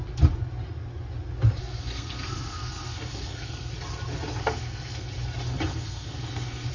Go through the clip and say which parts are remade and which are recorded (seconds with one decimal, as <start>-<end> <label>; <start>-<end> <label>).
0.0-1.6 recorded; 1.6-3.7 remade; 3.7-4.4 recorded; 4.4-5.1 remade; 5.1-5.7 recorded; 5.7-6.7 remade